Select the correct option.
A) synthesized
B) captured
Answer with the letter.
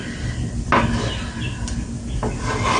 B